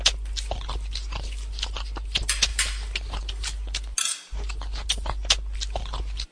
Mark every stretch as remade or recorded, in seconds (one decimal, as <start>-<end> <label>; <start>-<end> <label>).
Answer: 0.0-6.3 recorded